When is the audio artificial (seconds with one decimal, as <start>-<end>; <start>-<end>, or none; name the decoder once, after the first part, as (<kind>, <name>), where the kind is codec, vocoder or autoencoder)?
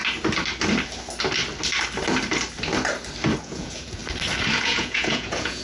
3.4-4.0 (vocoder, Vocos); 4.6-5.6